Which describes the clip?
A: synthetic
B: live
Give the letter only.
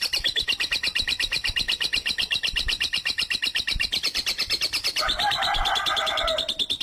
A